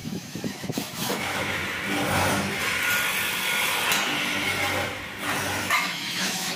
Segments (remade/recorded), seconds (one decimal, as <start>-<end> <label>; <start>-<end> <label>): 0.0-1.6 remade; 1.6-5.6 recorded; 5.6-6.6 remade